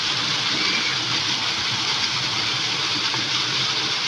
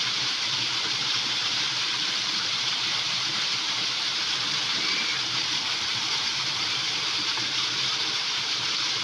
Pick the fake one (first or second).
second